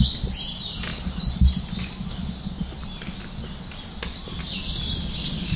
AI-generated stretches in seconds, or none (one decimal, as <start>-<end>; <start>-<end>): none